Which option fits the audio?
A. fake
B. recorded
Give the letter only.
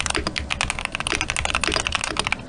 B